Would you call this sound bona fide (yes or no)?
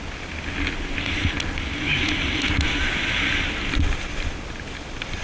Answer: yes